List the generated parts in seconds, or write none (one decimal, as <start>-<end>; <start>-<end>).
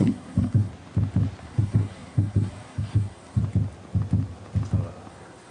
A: 0.0-0.7; 1.4-3.4; 5.1-5.5